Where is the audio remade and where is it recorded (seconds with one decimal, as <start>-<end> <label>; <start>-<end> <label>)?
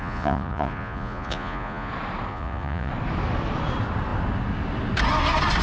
0.0-1.9 remade; 1.9-2.3 recorded; 2.3-2.9 remade; 2.9-5.6 recorded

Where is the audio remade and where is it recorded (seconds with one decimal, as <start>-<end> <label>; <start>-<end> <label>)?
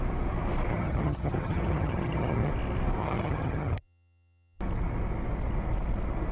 0.0-0.7 recorded; 0.7-2.5 remade; 2.5-3.0 recorded; 3.0-4.6 remade; 4.6-6.3 recorded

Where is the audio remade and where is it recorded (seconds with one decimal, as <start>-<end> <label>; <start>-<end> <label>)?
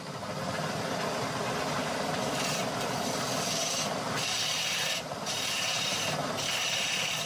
0.0-1.8 recorded; 1.8-2.6 remade; 2.6-6.2 recorded; 6.2-7.3 remade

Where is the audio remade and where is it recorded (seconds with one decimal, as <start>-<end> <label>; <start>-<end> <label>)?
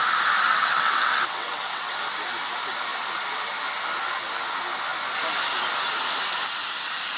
0.0-0.5 recorded; 0.5-1.9 remade; 1.9-7.2 recorded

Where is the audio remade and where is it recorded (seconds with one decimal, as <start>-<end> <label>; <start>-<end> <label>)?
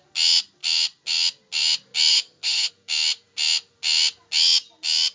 0.0-2.1 recorded; 2.1-2.7 remade; 2.7-5.1 recorded